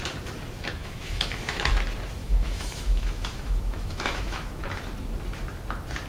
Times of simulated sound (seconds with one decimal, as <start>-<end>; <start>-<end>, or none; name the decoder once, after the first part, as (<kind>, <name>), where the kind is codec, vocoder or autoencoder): 0.8-1.7 (autoencoder, DAC-VAE); 2.2-4.6